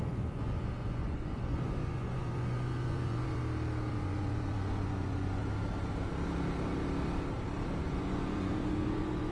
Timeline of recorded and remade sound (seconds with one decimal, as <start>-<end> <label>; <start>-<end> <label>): 0.0-3.4 remade; 3.4-3.9 recorded; 3.9-5.4 remade; 5.4-7.8 recorded; 7.8-9.3 remade